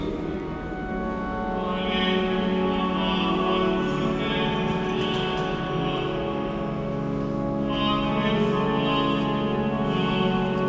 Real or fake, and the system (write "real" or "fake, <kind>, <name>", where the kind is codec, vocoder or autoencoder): real